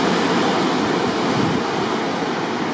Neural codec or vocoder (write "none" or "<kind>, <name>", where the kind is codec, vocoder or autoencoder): none